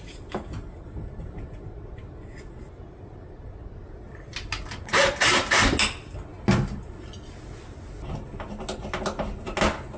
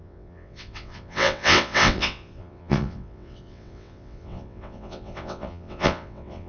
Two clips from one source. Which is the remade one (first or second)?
second